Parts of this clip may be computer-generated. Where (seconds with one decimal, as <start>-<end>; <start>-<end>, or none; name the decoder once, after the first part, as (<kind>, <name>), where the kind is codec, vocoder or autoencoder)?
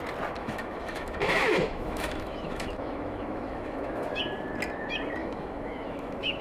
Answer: 0.4-4.2 (autoencoder, DAC-VAE); 5.2-6.4